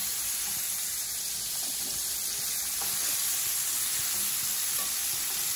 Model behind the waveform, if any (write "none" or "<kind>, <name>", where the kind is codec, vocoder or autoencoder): vocoder, BigVGAN v2